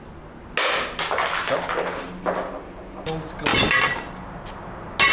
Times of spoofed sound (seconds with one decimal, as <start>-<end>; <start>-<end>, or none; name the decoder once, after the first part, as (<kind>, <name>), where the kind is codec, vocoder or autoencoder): none